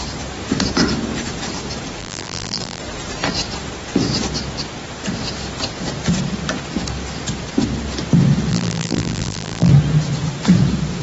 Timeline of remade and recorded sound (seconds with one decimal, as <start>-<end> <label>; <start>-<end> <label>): 0.0-2.0 recorded; 2.0-2.8 remade; 2.8-8.5 recorded; 8.5-9.7 remade; 9.7-11.0 recorded